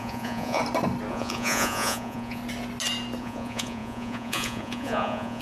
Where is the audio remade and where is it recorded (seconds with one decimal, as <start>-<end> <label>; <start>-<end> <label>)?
0.0-0.6 remade; 0.6-1.1 recorded; 1.1-2.4 remade; 2.4-3.2 recorded; 3.2-5.4 remade